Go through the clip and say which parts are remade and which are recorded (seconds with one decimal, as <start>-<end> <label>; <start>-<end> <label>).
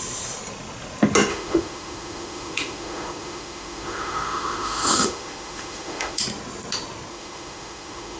0.0-1.3 recorded; 1.3-6.2 remade; 6.2-7.1 recorded; 7.1-8.2 remade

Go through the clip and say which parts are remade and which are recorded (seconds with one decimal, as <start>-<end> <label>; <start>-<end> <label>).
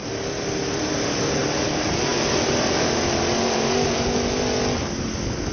0.0-5.5 recorded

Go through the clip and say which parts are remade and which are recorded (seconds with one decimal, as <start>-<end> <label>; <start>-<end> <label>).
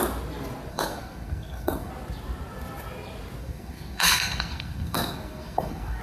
0.0-0.7 recorded; 0.7-1.9 remade; 1.9-3.4 recorded; 3.4-6.0 remade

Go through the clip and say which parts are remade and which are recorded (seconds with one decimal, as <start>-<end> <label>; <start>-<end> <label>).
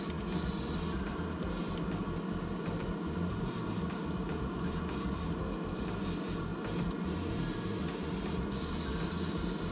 0.0-9.7 recorded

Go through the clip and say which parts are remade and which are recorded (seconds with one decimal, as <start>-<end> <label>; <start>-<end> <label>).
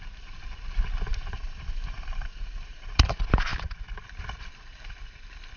0.0-1.1 recorded; 1.1-3.1 remade; 3.1-5.6 recorded